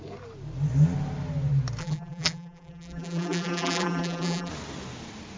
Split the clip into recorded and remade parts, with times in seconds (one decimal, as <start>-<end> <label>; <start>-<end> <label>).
0.0-1.8 recorded; 1.8-4.5 remade; 4.5-5.4 recorded